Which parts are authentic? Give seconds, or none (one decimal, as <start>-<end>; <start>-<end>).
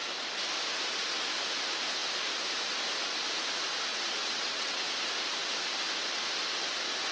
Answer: 0.0-3.9; 4.8-7.1